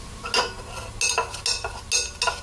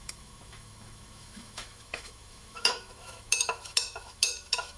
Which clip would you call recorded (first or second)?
first